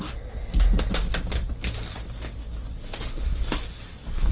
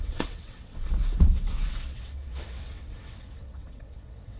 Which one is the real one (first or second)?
first